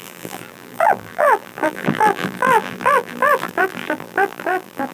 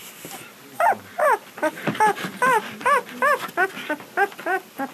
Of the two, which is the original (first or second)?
second